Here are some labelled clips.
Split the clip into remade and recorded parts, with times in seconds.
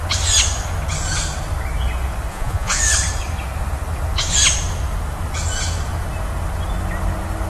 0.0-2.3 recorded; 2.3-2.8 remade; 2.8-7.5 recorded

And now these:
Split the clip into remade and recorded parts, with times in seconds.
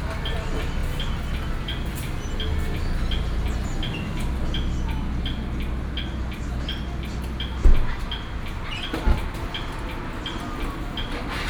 0.0-11.5 recorded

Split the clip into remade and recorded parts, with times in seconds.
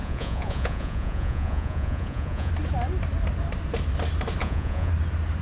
0.0-2.5 remade; 2.5-4.4 recorded; 4.4-4.9 remade; 4.9-5.4 recorded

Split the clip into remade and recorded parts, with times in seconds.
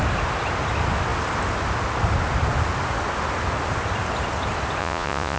0.0-4.8 recorded; 4.8-5.4 remade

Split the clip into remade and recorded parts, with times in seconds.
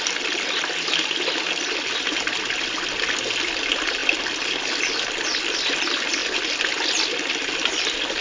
0.0-8.2 recorded